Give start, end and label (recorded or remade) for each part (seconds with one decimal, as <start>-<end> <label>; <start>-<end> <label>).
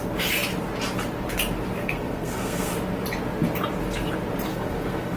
0.0-1.8 recorded; 1.8-2.7 remade; 2.7-4.5 recorded; 4.5-5.2 remade